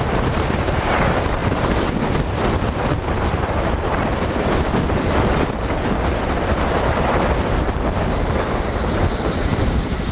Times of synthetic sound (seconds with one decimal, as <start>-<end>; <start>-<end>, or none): 0.0-10.1

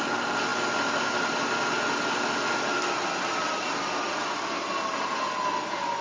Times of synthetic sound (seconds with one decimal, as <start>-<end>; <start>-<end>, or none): none

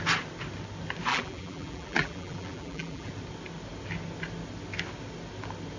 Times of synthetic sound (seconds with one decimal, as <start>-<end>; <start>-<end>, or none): 1.1-3.1

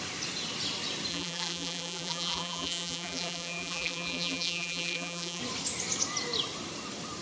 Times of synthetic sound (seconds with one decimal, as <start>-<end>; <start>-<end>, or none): 1.1-5.4

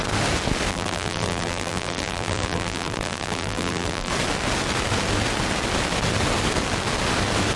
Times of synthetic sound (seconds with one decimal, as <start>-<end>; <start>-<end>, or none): 0.7-4.1